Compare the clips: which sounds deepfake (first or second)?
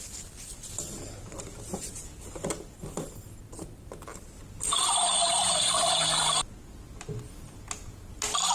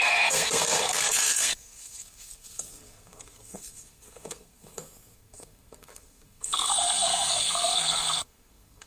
second